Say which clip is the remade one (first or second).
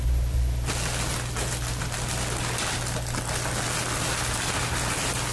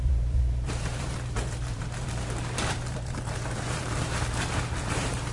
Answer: second